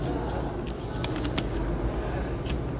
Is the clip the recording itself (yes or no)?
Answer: yes